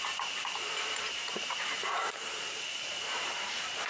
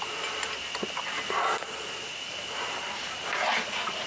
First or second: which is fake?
first